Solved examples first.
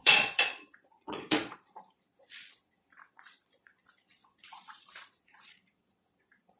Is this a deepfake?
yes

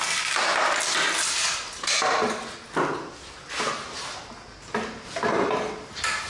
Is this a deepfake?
no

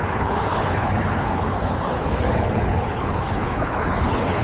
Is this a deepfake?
yes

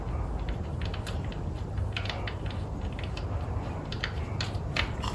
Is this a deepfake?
no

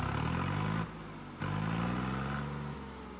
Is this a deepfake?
no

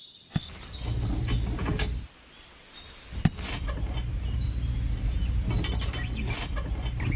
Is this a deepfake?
no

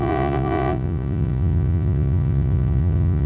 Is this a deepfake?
yes